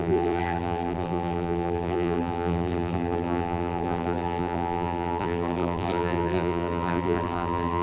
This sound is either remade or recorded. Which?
remade